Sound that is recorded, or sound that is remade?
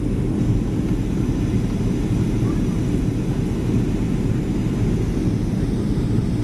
recorded